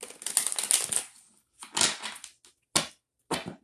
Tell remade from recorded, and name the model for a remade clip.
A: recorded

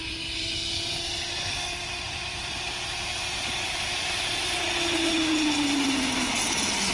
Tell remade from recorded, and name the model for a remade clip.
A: recorded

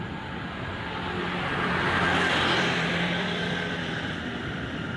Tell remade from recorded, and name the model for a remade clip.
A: remade, vocoder, BigVGAN v2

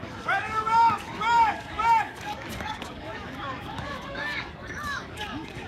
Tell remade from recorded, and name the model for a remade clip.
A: remade, codec, DAC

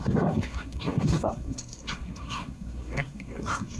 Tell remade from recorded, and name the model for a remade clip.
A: remade, codec, SNAC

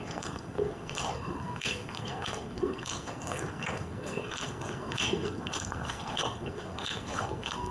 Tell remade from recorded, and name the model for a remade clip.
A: remade, codec, SNAC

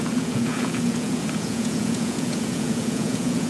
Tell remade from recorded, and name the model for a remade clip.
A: remade, vocoder, Vocos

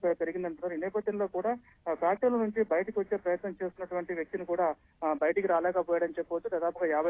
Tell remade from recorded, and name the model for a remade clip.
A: recorded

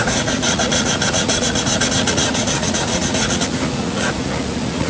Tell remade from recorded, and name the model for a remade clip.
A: remade, vocoder, Vocos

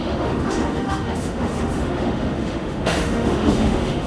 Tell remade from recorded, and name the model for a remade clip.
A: remade, autoencoder, DAC-VAE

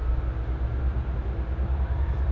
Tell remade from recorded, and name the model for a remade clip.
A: recorded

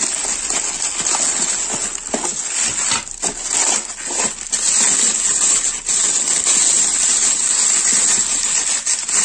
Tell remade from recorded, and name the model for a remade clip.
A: recorded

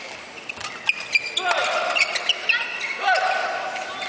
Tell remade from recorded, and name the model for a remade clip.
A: recorded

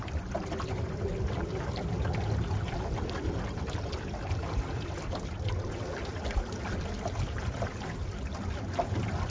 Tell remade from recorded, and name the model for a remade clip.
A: recorded